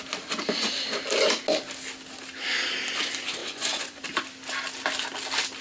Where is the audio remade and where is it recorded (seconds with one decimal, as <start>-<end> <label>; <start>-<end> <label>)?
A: 0.0-3.4 recorded; 3.4-4.0 remade; 4.0-5.6 recorded